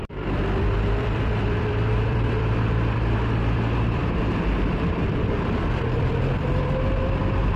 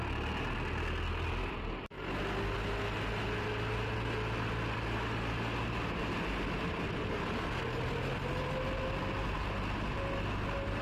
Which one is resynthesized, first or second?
first